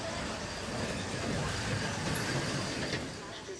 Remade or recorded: recorded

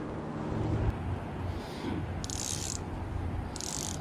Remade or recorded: recorded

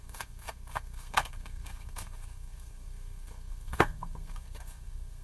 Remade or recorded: remade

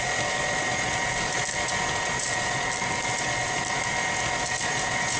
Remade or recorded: recorded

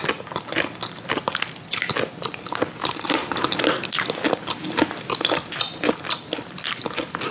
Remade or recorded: recorded